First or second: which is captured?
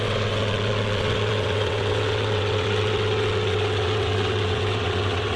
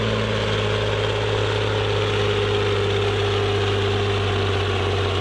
second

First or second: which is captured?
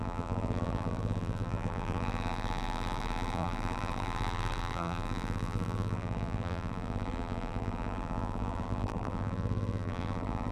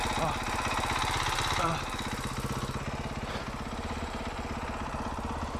second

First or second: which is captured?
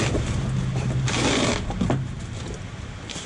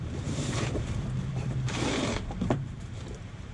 first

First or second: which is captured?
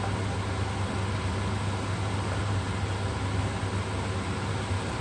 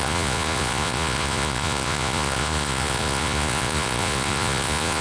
first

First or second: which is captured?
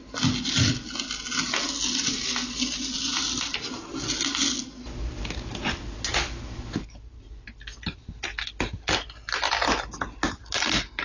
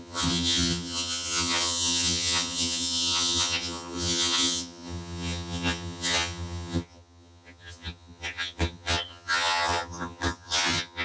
first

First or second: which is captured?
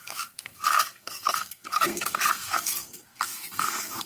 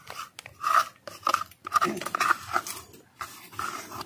second